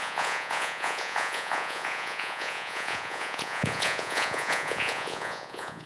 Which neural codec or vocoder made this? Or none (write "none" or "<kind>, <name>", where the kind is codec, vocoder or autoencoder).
vocoder, Vocos